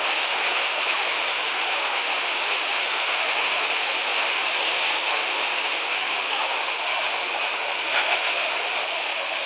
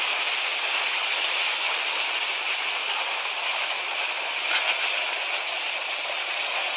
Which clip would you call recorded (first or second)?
second